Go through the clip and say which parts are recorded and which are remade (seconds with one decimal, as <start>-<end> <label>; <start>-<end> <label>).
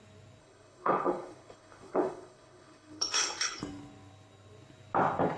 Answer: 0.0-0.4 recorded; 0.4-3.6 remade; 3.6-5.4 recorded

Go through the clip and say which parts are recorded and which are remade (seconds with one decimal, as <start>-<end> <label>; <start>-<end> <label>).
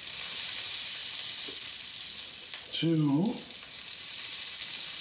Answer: 0.0-1.0 remade; 1.0-4.0 recorded; 4.0-5.0 remade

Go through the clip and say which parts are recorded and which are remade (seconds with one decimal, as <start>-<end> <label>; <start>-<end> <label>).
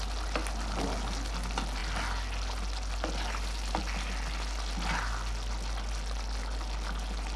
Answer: 0.0-7.4 recorded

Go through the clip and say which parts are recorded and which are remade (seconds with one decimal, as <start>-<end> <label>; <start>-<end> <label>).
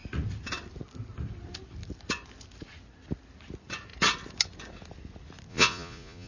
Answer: 0.0-5.5 recorded; 5.5-6.3 remade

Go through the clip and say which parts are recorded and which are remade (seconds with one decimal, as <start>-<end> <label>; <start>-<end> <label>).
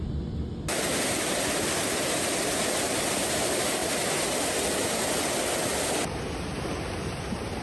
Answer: 0.0-7.6 recorded